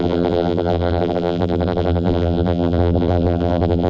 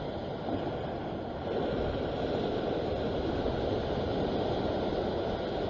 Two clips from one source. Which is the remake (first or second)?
first